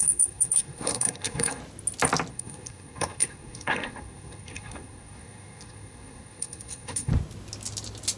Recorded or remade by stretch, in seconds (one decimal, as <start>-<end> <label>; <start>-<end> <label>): 0.0-1.6 remade; 1.6-2.3 recorded; 2.3-7.1 remade; 7.1-8.2 recorded